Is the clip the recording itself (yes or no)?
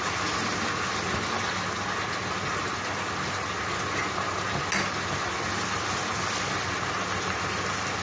yes